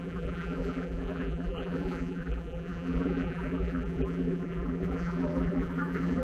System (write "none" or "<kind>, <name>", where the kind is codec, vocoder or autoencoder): vocoder, BigVGAN v2